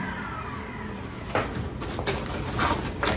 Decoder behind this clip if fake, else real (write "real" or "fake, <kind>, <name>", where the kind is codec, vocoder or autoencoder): real